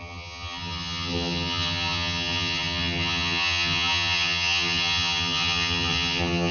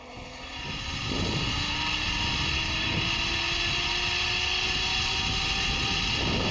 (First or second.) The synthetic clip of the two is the first